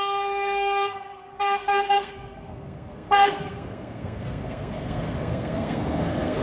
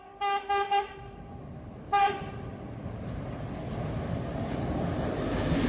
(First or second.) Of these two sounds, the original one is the second